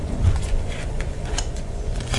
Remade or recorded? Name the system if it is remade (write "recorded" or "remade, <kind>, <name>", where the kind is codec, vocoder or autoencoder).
remade, vocoder, Vocos